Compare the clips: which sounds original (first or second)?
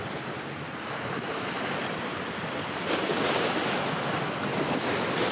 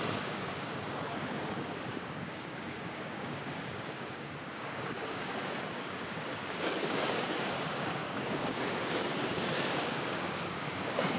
first